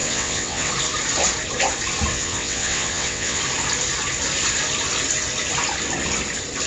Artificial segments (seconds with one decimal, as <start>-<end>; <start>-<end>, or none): 0.0-0.7; 2.1-3.4